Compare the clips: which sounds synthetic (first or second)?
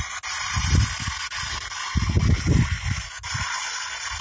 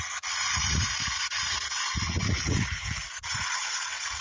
second